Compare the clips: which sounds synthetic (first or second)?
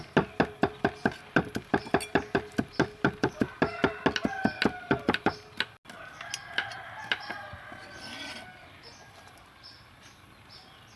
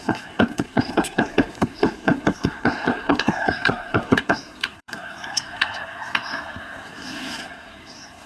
second